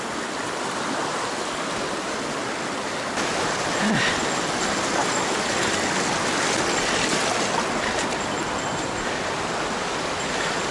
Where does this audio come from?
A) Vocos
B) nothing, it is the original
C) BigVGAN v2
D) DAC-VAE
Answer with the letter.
B